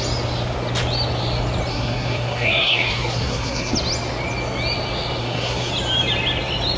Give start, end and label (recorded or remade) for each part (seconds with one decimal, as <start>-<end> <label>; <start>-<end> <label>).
0.0-1.7 recorded; 1.7-3.7 remade; 3.7-5.2 recorded; 5.2-5.7 remade; 5.7-6.8 recorded